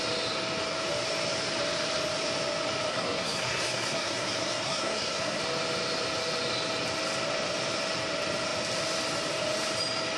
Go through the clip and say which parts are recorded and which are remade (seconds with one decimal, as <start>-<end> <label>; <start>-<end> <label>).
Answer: 0.0-2.9 recorded; 2.9-5.4 remade; 5.4-10.2 recorded